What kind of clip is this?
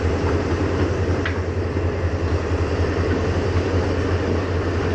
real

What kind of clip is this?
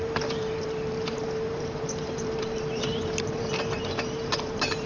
fake